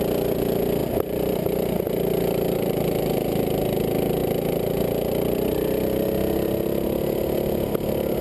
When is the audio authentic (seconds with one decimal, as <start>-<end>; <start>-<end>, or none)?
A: 0.0-0.8; 2.9-8.2